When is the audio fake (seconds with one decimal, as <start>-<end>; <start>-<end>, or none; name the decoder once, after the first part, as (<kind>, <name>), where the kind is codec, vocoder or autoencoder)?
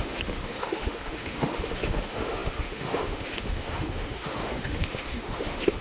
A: 0.0-5.8 (autoencoder, DAC-VAE)